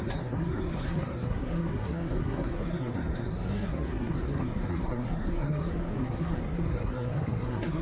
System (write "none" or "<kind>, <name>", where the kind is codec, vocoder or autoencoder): codec, SNAC